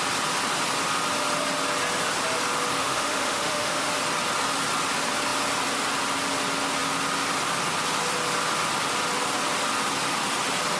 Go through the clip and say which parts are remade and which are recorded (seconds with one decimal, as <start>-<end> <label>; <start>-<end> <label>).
0.0-2.8 recorded; 2.8-3.9 remade; 3.9-10.8 recorded